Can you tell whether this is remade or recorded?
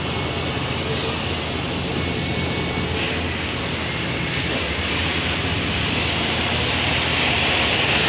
recorded